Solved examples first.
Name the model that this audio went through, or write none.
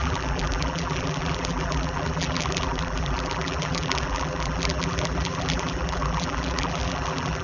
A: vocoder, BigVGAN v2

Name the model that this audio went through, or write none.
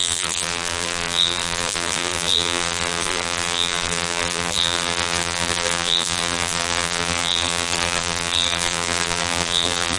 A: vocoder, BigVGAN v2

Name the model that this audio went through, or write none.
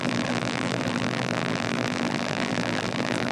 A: vocoder, BigVGAN v2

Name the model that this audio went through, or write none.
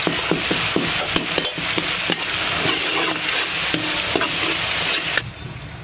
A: none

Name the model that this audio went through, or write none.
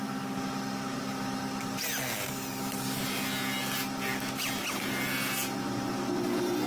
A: none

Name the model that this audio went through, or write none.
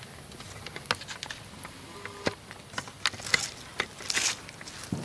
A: none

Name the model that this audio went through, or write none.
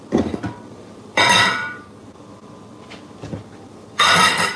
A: vocoder, BigVGAN v2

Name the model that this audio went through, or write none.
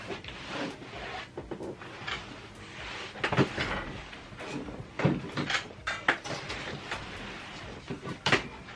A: vocoder, BigVGAN v2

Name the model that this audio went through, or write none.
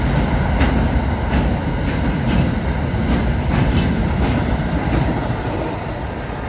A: none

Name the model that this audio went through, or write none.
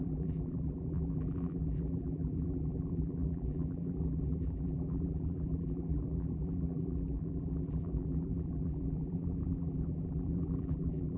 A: vocoder, BigVGAN v2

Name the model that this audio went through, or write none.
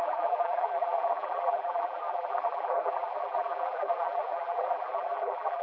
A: vocoder, BigVGAN v2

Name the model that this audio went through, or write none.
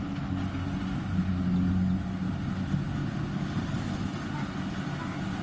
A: none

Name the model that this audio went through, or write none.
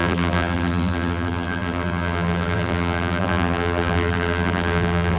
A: vocoder, BigVGAN v2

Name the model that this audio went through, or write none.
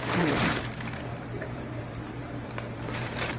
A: vocoder, BigVGAN v2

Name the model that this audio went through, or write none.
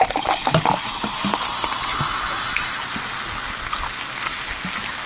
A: none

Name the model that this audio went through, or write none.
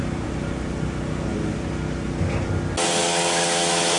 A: none